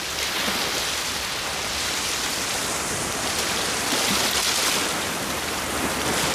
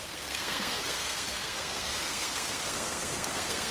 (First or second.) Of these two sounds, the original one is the first